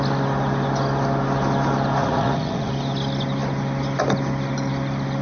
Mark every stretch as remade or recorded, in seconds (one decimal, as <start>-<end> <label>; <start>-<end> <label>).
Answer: 0.0-2.0 recorded; 2.0-2.7 remade; 2.7-5.2 recorded